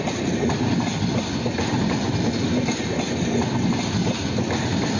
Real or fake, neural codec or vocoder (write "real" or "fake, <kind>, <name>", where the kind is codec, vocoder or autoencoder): real